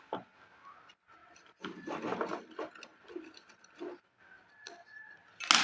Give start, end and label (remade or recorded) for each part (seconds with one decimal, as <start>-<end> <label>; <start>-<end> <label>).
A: 0.0-5.6 recorded